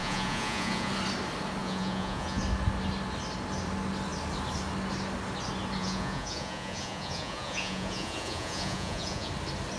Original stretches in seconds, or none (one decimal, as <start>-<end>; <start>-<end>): 0.9-1.6; 2.4-5.8; 9.3-9.8